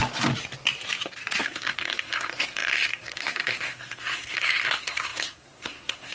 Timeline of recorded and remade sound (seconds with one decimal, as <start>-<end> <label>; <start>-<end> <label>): 0.0-1.4 recorded; 1.4-6.1 remade